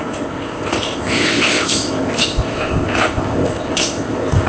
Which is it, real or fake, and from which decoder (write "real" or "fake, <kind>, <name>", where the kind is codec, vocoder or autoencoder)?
fake, codec, ZipCodec